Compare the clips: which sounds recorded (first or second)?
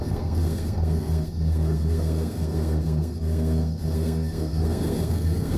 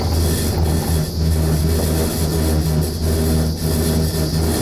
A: second